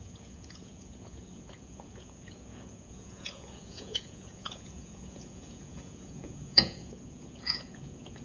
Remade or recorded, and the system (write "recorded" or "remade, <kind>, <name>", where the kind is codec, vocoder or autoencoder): remade, vocoder, Vocos